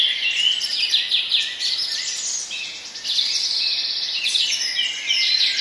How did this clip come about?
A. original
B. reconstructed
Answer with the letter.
A